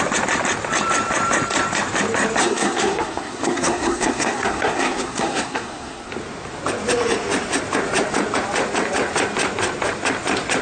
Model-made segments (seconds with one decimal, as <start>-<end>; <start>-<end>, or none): 2.4-6.1